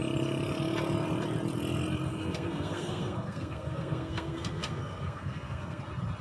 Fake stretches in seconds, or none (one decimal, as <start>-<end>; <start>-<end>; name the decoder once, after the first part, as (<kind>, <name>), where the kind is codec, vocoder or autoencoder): 2.1-5.8 (codec, SNAC)